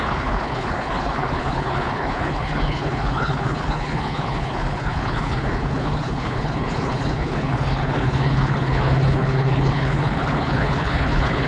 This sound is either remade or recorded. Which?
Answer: remade